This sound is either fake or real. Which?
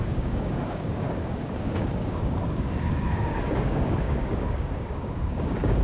fake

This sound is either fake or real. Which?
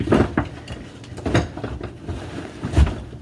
real